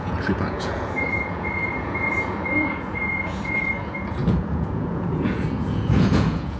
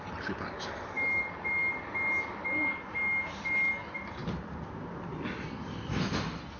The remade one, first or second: first